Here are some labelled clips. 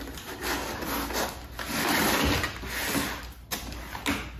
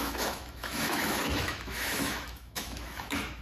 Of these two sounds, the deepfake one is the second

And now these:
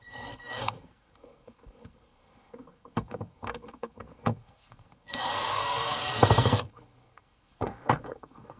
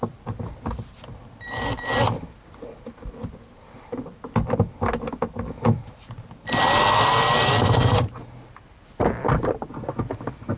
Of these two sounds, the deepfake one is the first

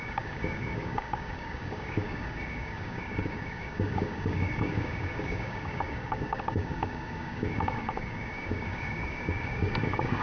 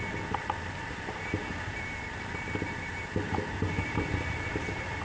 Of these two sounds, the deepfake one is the first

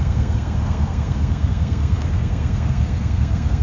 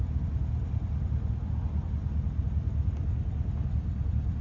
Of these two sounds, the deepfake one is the first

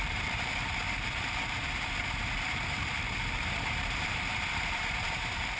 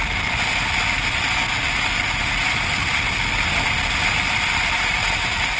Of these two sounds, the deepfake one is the first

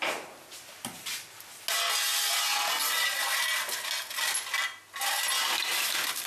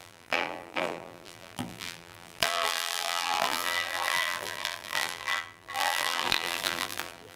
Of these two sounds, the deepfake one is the second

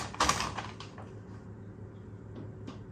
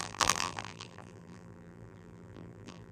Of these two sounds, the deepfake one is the second